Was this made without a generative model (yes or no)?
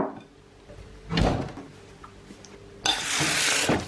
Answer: yes